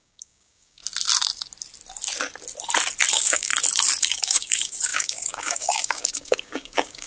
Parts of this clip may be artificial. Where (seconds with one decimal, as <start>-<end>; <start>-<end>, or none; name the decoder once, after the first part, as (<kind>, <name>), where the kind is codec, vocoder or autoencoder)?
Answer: 0.0-0.8 (codec, DAC); 3.1-3.5; 4.0-7.1